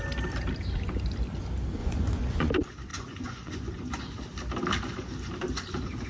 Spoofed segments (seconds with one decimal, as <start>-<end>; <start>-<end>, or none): 1.8-2.5; 2.9-4.0